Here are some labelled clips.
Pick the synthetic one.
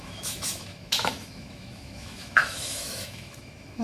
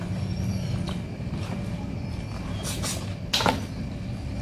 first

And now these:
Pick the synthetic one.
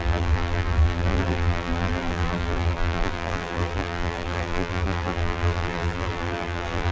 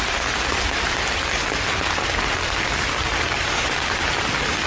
first